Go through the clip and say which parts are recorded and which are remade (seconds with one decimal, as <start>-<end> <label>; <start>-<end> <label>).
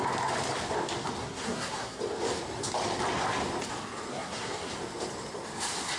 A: 0.0-1.2 recorded; 1.2-2.0 remade; 2.0-4.1 recorded; 4.1-4.7 remade; 4.7-6.0 recorded